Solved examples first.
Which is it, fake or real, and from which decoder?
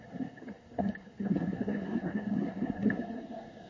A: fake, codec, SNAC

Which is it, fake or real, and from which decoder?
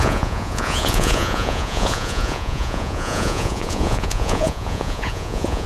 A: fake, vocoder, Vocos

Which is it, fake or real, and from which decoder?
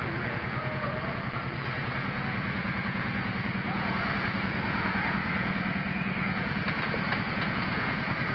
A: fake, vocoder, Vocos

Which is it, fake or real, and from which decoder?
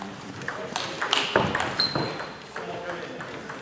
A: real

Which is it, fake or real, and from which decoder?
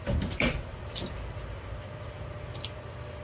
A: real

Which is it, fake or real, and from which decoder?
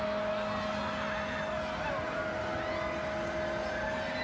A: real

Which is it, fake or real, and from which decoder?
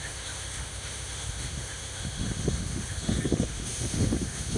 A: fake, autoencoder, DAC-VAE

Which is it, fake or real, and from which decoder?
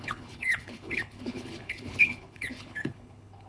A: fake, codec, HILCodec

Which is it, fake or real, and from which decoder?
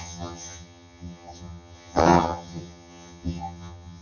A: fake, vocoder, HiFi-GAN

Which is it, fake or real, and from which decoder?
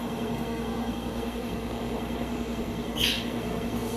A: fake, codec, SNAC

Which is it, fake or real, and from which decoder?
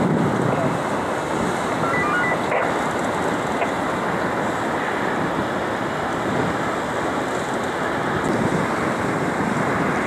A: real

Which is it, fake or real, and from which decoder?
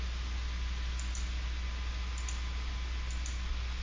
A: real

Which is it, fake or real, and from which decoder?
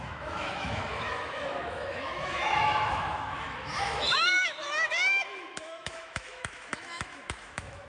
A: fake, autoencoder, DAC-VAE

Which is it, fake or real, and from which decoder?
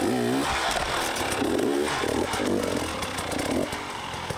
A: real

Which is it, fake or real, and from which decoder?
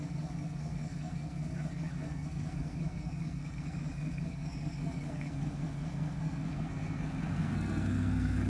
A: fake, codec, SNAC